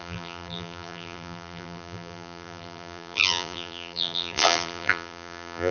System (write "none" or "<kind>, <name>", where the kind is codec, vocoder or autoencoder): vocoder, BigVGAN v2